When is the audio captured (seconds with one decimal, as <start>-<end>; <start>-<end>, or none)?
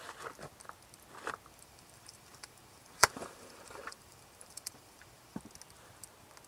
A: 0.0-1.5; 5.4-6.5